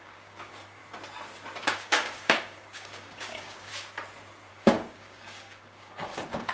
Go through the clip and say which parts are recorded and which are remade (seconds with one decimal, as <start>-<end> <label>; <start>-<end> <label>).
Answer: 0.0-0.8 remade; 0.8-1.6 recorded; 1.6-3.7 remade; 3.7-4.5 recorded; 4.5-6.5 remade